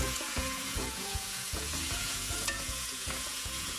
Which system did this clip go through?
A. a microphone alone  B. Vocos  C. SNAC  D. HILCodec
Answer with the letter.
B